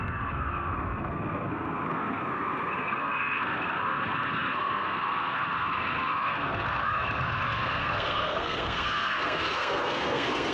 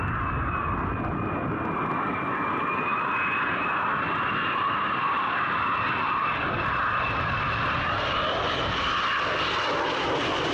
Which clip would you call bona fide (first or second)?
second